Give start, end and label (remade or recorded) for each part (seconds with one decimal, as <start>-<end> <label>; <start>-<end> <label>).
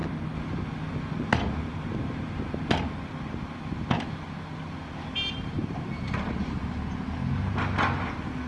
0.0-5.6 recorded; 5.6-7.2 remade; 7.2-8.5 recorded